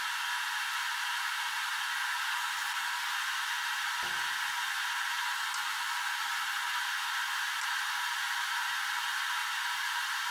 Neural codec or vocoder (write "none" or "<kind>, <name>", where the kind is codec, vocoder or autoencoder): none